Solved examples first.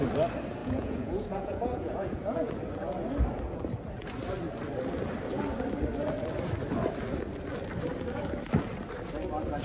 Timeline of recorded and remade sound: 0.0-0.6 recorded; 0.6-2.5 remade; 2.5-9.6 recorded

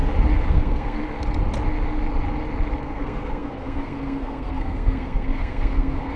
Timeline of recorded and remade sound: 0.0-0.5 recorded; 0.5-1.0 remade; 1.0-2.8 recorded; 2.8-6.2 remade

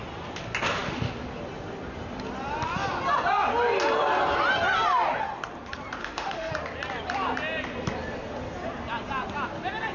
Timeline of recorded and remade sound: 0.0-6.0 recorded; 6.0-6.5 remade; 6.5-9.9 recorded

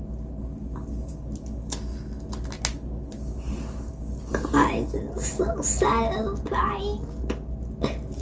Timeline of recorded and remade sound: 0.0-8.2 recorded